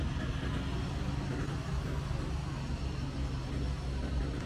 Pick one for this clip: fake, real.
real